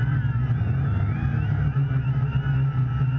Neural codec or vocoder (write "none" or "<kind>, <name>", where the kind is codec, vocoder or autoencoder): none